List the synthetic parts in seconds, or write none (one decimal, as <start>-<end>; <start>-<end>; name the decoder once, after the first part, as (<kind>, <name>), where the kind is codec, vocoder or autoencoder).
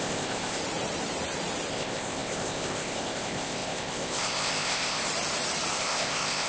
0.0-0.6 (codec, ZipCodec); 1.7-5.0; 5.7-6.5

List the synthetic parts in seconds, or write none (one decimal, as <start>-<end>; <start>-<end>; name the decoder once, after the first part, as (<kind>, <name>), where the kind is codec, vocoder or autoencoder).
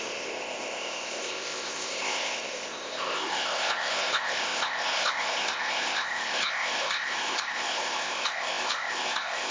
0.0-9.5 (codec, ZipCodec)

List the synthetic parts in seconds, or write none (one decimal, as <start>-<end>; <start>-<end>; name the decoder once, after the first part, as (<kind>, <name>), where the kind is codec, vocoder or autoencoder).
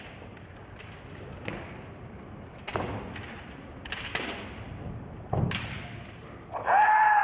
none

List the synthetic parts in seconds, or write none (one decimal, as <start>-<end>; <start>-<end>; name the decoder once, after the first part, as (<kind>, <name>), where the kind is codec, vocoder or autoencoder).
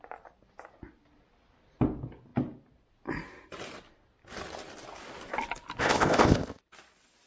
5.8-6.6 (codec, ZipCodec)